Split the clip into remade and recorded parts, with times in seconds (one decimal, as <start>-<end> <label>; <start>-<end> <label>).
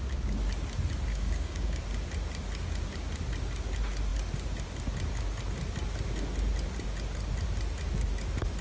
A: 0.0-1.1 recorded; 1.1-1.8 remade; 1.8-8.6 recorded